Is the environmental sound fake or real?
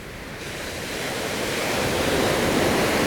fake